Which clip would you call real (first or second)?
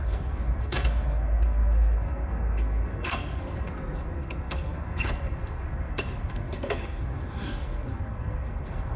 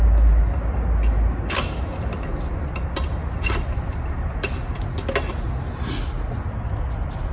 second